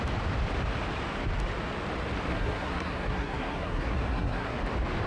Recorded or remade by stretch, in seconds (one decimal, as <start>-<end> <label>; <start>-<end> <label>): 0.0-2.3 recorded; 2.3-4.6 remade; 4.6-5.1 recorded